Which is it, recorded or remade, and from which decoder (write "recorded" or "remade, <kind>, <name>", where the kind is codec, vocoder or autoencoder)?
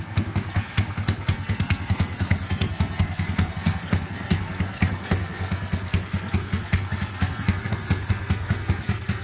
remade, codec, SNAC